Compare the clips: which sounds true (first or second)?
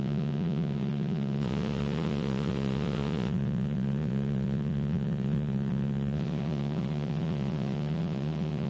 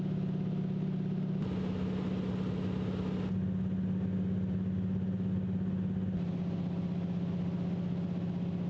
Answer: second